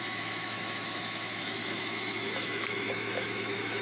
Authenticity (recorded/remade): remade